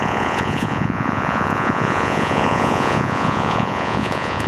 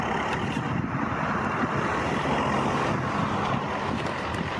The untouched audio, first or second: second